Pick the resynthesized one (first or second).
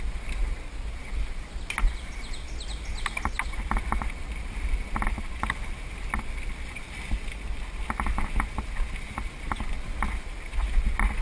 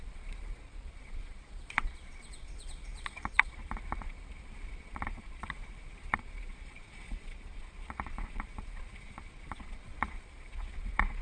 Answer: second